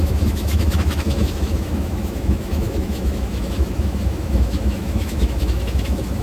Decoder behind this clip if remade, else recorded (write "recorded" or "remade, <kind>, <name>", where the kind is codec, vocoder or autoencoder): remade, autoencoder, DAC-VAE